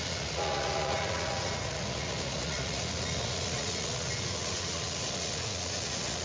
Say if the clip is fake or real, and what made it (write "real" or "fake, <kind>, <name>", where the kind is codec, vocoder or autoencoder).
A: fake, vocoder, Vocos